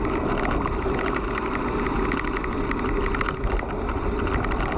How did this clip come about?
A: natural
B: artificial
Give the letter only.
A